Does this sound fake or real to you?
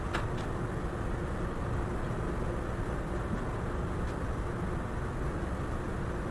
real